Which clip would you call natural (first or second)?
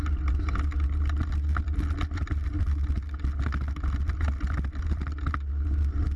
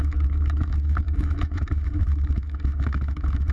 first